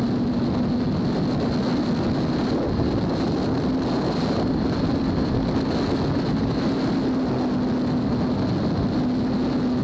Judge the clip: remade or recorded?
recorded